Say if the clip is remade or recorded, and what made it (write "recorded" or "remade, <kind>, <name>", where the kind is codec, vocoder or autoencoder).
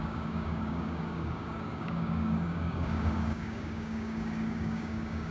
remade, codec, DAC